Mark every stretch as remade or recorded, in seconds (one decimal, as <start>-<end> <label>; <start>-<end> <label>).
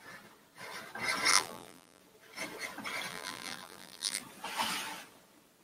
0.0-1.3 recorded; 1.3-2.0 remade; 2.0-3.1 recorded; 3.1-4.2 remade; 4.2-5.6 recorded